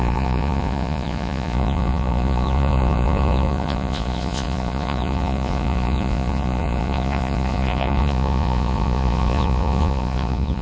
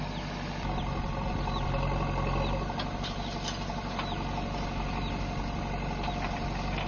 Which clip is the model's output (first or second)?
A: first